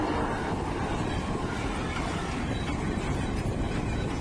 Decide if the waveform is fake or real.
real